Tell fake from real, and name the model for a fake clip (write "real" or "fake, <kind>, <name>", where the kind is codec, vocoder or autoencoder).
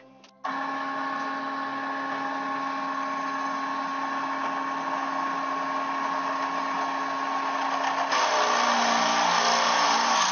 real